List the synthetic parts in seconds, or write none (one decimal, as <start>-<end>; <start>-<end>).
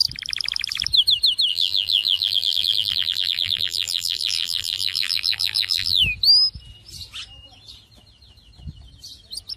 1.5-6.0